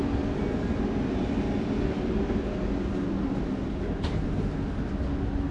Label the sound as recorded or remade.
recorded